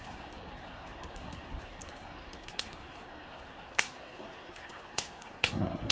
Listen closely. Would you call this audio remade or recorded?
remade